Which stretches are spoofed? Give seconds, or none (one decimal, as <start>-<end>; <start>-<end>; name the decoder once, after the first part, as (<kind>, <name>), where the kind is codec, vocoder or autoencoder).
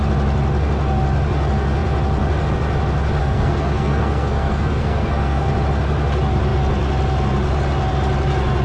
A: 3.2-5.5 (codec, SNAC)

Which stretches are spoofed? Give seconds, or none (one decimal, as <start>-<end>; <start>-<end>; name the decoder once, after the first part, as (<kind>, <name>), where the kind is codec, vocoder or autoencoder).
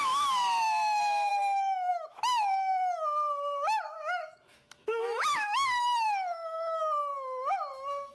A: 0.0-8.1 (autoencoder, DAC-VAE)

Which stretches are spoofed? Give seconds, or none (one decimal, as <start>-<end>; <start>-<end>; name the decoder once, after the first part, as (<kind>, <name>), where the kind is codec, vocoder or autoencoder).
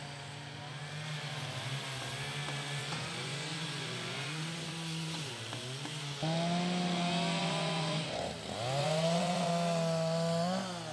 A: 2.8-5.3 (vocoder, Vocos); 7.4-8.3; 8.8-9.5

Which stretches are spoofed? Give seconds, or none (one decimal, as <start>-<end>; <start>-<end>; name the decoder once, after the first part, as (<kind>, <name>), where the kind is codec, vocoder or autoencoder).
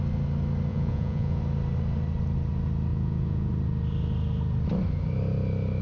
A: 0.7-1.4 (vocoder, Vocos); 2.9-3.5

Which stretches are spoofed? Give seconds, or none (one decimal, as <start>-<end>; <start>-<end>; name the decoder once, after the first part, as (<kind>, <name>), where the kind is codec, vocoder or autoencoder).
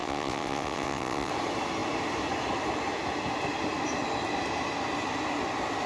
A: 0.0-1.3 (vocoder, WaveNeXt)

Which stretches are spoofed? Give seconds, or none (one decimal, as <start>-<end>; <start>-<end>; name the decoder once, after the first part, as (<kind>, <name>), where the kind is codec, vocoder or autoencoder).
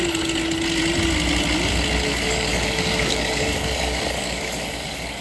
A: 2.1-5.2 (codec, DAC)